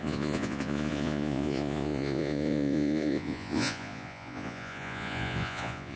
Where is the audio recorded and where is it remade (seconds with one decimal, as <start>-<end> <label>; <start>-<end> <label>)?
0.0-6.0 remade

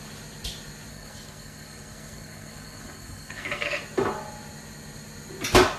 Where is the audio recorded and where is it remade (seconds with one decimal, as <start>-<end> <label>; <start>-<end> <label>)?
0.0-0.9 recorded; 0.9-3.8 remade; 3.8-5.8 recorded

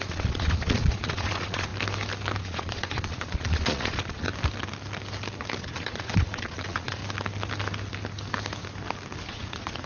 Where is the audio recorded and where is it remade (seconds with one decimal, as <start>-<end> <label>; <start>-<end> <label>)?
0.0-1.7 remade; 1.7-2.4 recorded; 2.4-4.3 remade; 4.3-5.6 recorded; 5.6-7.0 remade; 7.0-9.3 recorded; 9.3-9.9 remade

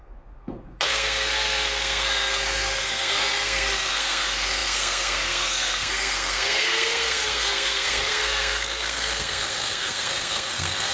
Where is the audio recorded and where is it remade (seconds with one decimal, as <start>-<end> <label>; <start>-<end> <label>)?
0.0-10.9 remade

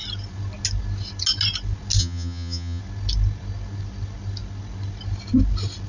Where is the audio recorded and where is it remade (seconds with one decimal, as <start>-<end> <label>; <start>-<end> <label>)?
0.0-2.0 recorded; 2.0-2.8 remade; 2.8-5.9 recorded

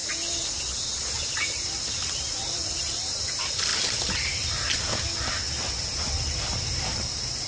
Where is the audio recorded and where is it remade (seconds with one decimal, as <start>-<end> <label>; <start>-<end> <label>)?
0.0-1.4 recorded; 1.4-3.7 remade; 3.7-6.1 recorded; 6.1-7.5 remade

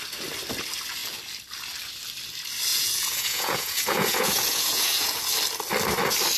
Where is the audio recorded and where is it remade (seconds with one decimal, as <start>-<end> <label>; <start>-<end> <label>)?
0.0-2.7 recorded; 2.7-5.3 remade; 5.3-6.4 recorded

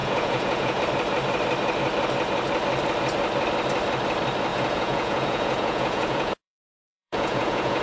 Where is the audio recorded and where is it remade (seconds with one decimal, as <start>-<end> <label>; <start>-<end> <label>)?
0.0-0.8 remade; 0.8-4.5 recorded; 4.5-7.8 remade